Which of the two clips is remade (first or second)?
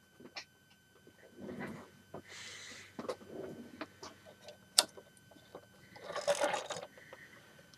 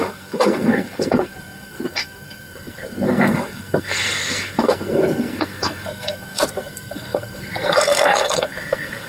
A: second